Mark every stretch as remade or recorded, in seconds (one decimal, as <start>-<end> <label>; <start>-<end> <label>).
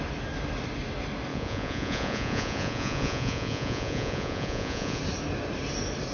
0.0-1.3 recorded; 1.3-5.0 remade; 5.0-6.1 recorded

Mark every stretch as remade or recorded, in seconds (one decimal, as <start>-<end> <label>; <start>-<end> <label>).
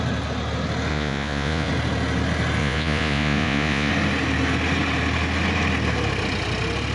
0.0-0.9 recorded; 0.9-1.7 remade; 1.7-2.6 recorded; 2.6-3.9 remade; 3.9-6.9 recorded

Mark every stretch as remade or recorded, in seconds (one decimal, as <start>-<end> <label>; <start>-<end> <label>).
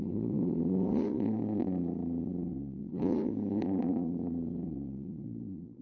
0.0-5.8 remade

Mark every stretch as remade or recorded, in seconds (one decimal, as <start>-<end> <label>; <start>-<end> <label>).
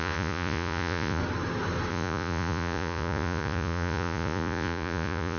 0.0-1.2 remade; 1.2-1.9 recorded; 1.9-5.4 remade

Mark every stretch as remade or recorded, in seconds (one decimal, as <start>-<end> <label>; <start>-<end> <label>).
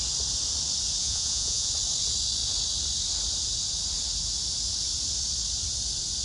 0.0-1.0 recorded; 1.0-1.7 remade; 1.7-6.2 recorded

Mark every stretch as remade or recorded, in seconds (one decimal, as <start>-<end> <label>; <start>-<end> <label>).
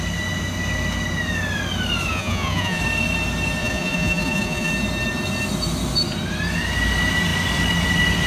0.0-2.1 recorded; 2.1-2.8 remade; 2.8-3.6 recorded; 3.6-4.7 remade; 4.7-8.3 recorded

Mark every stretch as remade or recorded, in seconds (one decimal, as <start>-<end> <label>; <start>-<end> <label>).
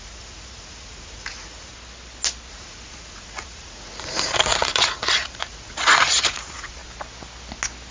0.0-1.7 remade; 1.7-2.5 recorded; 2.5-6.8 remade; 6.8-7.9 recorded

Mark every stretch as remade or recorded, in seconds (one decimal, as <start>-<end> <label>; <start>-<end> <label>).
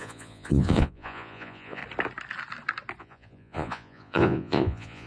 0.0-1.8 remade; 1.8-3.0 recorded; 3.0-5.1 remade